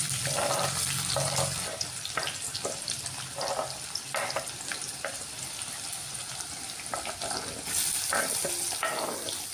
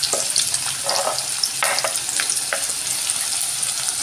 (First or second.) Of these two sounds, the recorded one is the second